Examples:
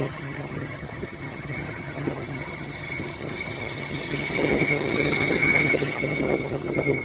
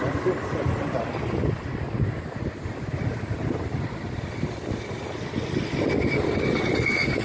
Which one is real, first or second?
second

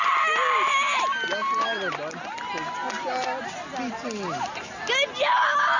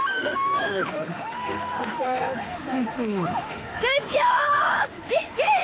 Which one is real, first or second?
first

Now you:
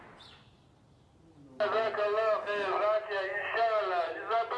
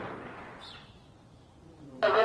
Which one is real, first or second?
first